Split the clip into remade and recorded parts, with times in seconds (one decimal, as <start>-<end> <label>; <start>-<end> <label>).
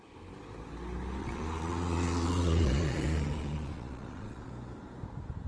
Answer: 0.0-1.2 recorded; 1.2-4.5 remade; 4.5-5.5 recorded